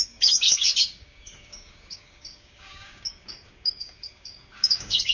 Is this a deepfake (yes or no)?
yes